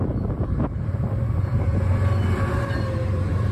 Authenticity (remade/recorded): recorded